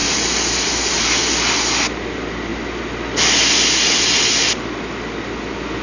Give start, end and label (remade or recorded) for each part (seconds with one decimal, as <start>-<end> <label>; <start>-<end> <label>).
0.0-5.8 recorded